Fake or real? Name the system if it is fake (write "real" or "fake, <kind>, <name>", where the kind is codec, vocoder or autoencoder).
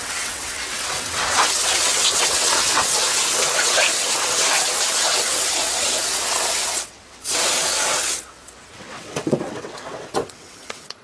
fake, vocoder, WaveNeXt